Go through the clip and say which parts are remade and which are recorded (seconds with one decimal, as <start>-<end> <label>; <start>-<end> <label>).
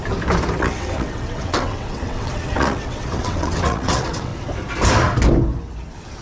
0.0-0.6 recorded; 0.6-4.3 remade; 4.3-6.2 recorded